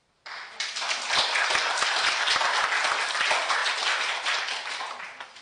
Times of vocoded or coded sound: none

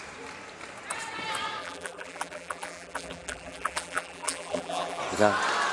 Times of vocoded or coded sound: 1.6-5.0 (vocoder, BigVGAN v2)

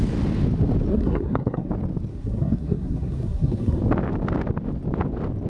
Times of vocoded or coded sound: 0.9-1.7 (codec, SNAC); 2.1-3.8

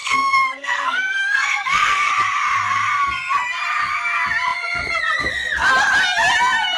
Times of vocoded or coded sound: 0.0-2.1 (codec, SNAC)

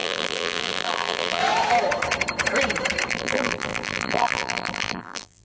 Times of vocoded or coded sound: 0.0-1.4 (vocoder, BigVGAN v2); 3.1-5.4

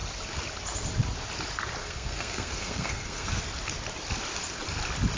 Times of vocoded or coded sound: 1.8-3.4 (codec, SNAC)

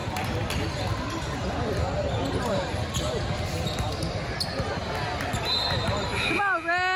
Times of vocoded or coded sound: none